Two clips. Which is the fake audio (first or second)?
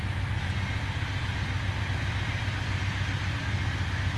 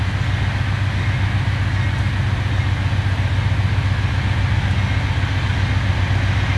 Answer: first